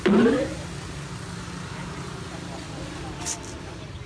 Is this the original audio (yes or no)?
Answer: yes